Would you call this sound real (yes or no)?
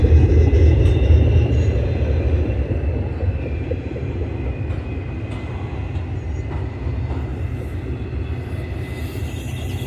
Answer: yes